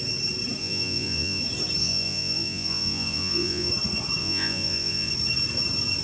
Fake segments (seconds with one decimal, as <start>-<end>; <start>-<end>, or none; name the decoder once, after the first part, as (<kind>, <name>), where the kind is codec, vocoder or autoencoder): 0.6-1.4 (vocoder, Vocos); 1.8-3.7; 4.2-5.1